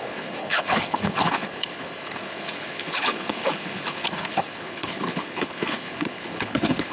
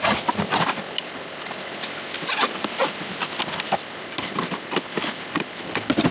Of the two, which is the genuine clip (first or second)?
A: second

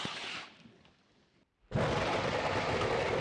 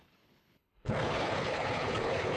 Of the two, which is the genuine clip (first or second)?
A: first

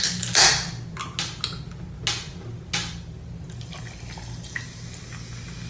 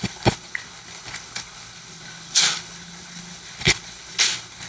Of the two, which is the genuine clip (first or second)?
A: first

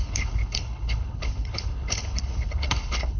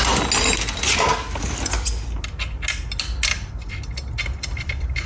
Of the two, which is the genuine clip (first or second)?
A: second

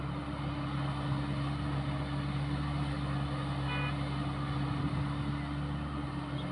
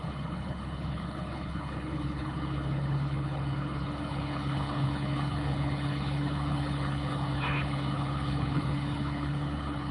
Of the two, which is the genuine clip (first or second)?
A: first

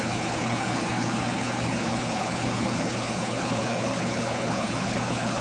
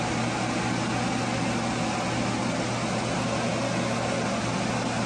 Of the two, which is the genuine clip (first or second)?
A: second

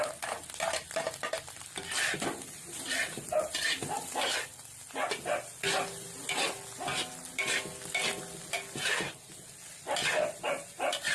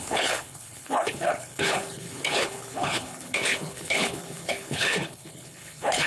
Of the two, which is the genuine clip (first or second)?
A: first